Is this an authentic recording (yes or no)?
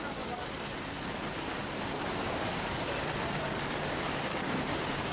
no